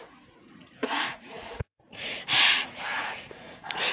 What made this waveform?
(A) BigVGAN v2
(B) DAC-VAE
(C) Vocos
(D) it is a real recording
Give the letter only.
C